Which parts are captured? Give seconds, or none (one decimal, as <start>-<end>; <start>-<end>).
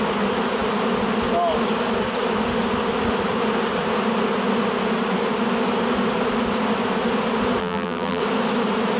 0.0-7.6; 8.2-9.0